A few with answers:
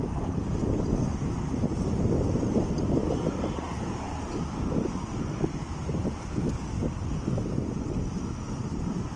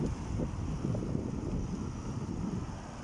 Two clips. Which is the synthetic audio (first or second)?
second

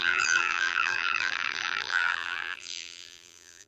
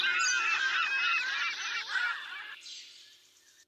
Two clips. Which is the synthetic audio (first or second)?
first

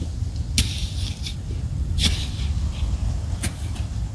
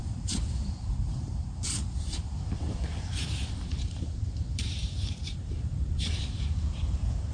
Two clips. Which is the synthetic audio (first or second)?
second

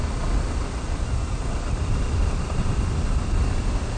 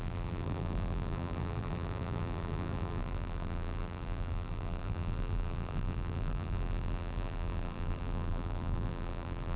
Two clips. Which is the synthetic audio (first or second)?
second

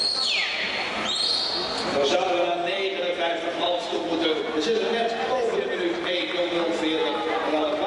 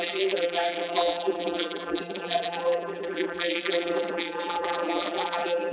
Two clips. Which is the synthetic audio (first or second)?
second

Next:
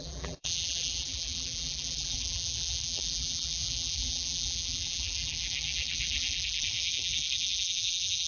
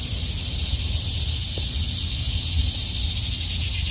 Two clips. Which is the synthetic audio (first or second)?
first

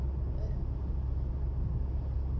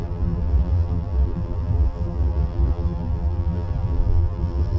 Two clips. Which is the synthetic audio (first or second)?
second